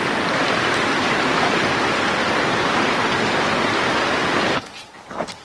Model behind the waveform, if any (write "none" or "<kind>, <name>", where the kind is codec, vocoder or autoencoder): none